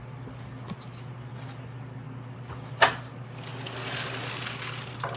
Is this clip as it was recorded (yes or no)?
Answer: yes